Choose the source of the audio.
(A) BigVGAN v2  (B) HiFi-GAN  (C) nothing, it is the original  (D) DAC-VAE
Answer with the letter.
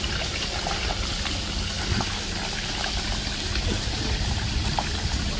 C